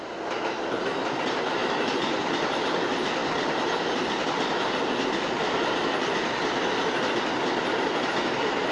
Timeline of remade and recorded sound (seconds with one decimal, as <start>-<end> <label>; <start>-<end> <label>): 0.0-1.6 recorded; 1.6-2.4 remade; 2.4-8.7 recorded